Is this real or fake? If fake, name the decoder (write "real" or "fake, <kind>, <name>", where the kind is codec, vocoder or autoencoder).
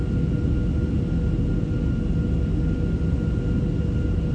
real